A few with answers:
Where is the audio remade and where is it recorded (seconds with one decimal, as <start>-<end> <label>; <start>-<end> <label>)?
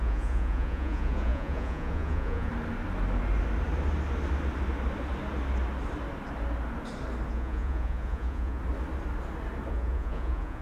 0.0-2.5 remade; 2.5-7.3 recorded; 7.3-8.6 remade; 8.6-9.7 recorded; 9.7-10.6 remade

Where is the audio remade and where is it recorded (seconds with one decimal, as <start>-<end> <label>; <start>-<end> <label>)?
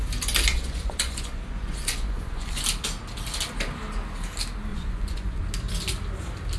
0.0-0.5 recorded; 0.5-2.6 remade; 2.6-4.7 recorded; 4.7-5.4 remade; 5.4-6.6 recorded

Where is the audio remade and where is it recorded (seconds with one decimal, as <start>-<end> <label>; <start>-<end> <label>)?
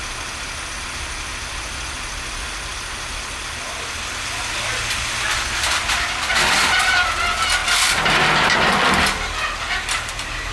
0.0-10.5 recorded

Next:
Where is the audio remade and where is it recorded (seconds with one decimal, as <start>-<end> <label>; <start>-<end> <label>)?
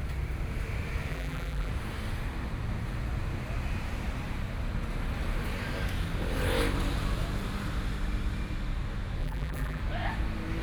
0.0-1.1 recorded; 1.1-1.7 remade; 1.7-9.2 recorded; 9.2-9.8 remade; 9.8-10.6 recorded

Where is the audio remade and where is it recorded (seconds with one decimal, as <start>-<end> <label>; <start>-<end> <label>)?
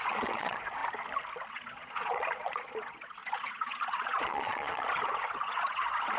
0.0-0.8 remade; 0.8-1.5 recorded; 1.5-6.2 remade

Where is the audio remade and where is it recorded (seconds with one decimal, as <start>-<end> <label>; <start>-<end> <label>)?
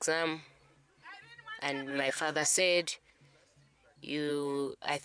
0.0-1.9 recorded; 1.9-2.6 remade; 2.6-4.3 recorded; 4.3-5.0 remade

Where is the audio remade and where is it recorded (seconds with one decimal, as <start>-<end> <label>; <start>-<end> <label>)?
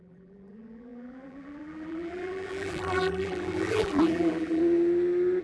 0.0-4.6 remade; 4.6-5.4 recorded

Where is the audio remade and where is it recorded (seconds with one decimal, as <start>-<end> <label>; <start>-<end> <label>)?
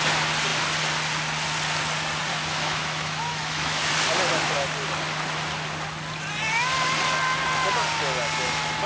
0.0-2.3 recorded; 2.3-3.9 remade; 3.9-8.9 recorded